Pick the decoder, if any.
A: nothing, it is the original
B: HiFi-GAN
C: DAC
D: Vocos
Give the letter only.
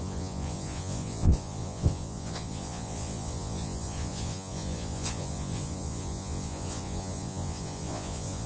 D